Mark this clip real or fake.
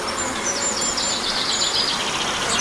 real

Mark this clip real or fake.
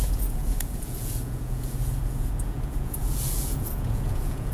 fake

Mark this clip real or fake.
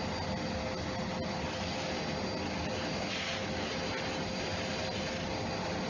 real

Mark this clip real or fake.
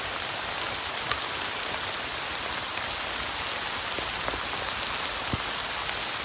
real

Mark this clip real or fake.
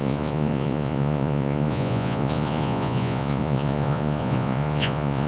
fake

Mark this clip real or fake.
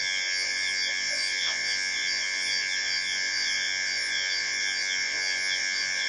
fake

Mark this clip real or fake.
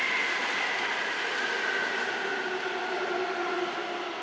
real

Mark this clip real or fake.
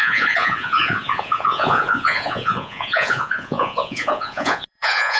fake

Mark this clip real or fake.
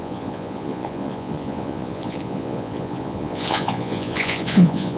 fake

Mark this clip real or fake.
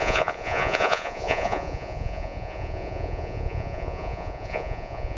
fake